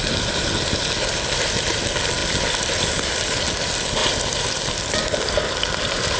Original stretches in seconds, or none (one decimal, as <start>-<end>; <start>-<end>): 0.0-6.2